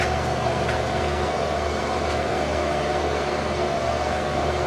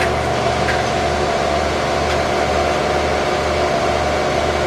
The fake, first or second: first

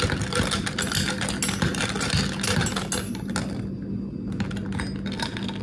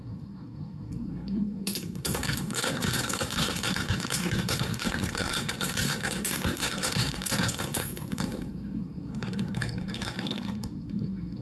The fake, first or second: second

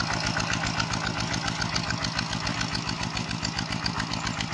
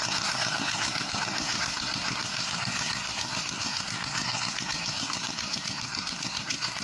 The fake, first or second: second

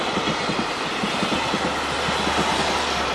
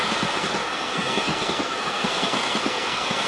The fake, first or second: second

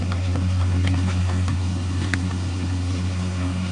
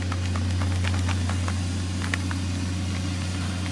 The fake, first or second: first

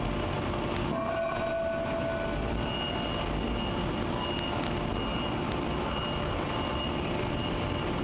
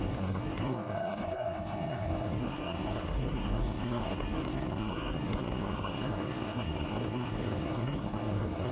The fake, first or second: second